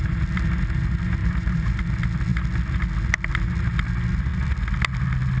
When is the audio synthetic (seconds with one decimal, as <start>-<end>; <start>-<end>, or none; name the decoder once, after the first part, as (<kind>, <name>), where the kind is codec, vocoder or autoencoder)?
1.2-1.8 (vocoder, BigVGAN v2)